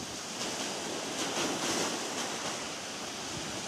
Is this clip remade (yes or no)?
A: no